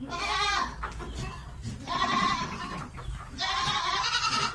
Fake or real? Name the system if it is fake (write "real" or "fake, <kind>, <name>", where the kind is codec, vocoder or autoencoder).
real